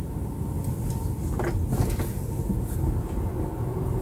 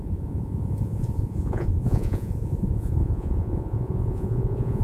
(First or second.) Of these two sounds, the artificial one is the second